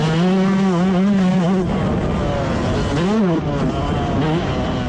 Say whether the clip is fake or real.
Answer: real